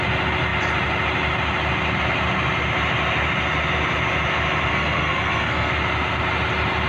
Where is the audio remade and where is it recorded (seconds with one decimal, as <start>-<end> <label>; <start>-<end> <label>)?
0.0-4.7 recorded; 4.7-5.7 remade; 5.7-6.9 recorded